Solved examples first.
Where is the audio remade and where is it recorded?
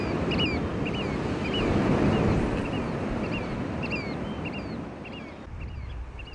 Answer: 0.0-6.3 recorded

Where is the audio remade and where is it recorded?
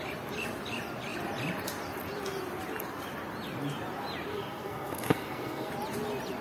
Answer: 0.0-4.3 recorded; 4.3-5.7 remade; 5.7-6.4 recorded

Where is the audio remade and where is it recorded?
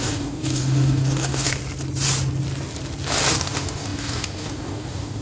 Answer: 0.0-1.6 remade; 1.6-3.3 recorded; 3.3-5.2 remade